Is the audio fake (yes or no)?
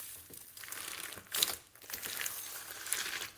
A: yes